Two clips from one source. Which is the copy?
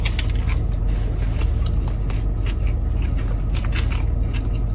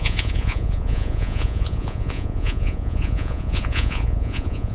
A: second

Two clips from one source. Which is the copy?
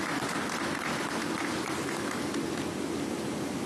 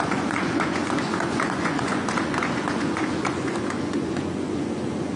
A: second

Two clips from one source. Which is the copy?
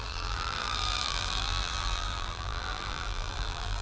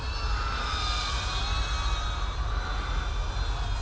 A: first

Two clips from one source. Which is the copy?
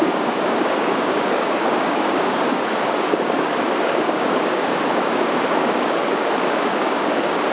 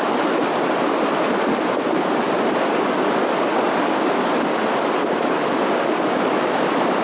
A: first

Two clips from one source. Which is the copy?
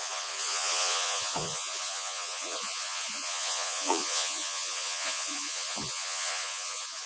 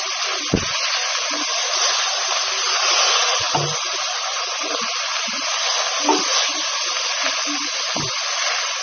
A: first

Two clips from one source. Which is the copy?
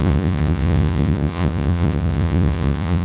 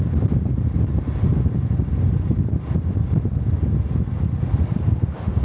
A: first